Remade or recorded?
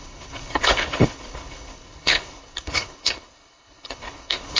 remade